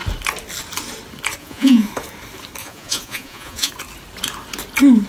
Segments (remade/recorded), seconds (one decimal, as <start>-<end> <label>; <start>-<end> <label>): 0.0-1.4 recorded; 1.4-1.9 remade; 1.9-2.6 recorded; 2.6-3.7 remade; 3.7-5.1 recorded